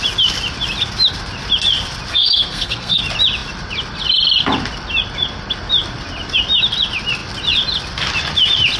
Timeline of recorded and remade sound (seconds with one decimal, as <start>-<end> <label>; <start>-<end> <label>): 0.0-2.1 recorded; 2.1-3.0 remade; 3.0-8.8 recorded